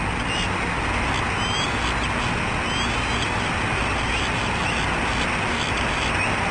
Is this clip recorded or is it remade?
recorded